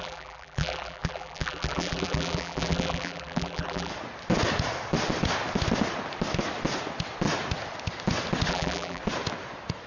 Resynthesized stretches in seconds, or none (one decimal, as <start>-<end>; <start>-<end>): 0.0-3.9; 8.5-9.0